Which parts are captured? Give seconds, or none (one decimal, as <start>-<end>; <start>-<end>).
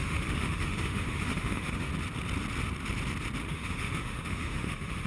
1.9-3.4